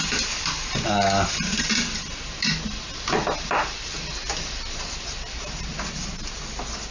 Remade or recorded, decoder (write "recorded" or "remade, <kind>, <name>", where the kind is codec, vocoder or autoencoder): recorded